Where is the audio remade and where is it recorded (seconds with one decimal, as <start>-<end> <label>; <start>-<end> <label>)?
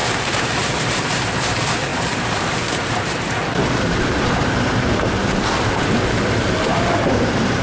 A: 0.0-7.6 remade